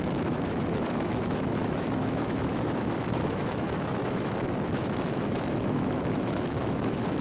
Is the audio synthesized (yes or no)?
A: yes